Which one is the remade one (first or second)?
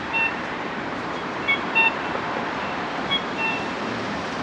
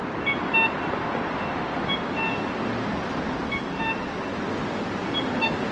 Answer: first